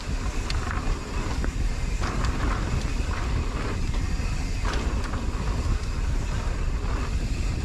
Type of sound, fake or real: real